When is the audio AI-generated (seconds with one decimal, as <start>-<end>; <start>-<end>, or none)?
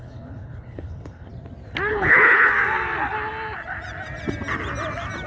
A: 0.0-1.3; 1.9-2.5